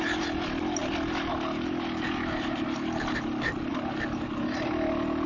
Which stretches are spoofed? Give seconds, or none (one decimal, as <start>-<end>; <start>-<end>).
none